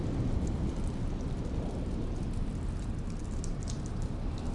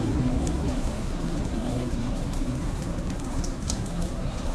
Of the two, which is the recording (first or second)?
first